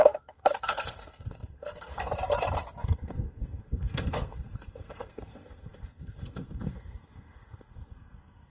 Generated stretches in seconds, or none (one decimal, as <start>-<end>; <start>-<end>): 0.0-2.1; 2.8-8.5